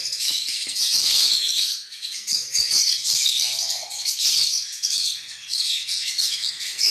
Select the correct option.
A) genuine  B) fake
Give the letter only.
B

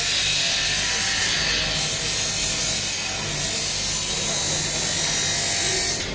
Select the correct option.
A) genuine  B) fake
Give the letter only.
A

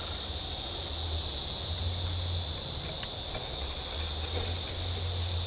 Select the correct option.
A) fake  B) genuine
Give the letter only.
B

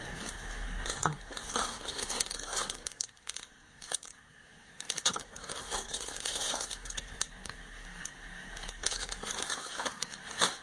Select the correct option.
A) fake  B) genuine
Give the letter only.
A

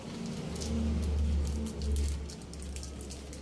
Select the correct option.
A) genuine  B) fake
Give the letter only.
A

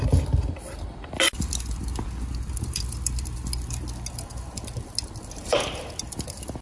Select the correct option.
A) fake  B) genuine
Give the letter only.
B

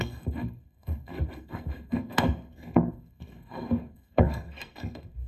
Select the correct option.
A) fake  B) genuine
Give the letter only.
A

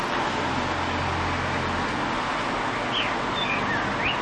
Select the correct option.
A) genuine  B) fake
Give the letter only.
A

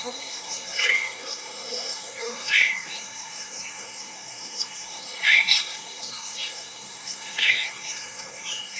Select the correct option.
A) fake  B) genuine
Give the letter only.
A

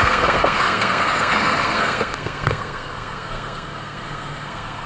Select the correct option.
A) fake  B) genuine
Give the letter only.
A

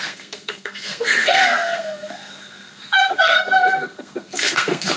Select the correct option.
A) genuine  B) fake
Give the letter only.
B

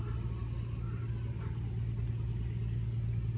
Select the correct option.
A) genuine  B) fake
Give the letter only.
A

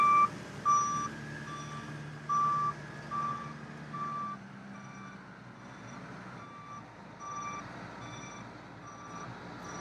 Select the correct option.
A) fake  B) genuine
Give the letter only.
B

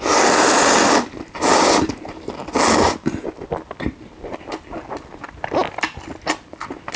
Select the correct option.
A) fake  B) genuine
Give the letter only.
B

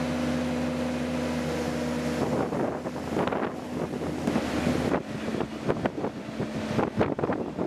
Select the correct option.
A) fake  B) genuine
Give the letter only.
B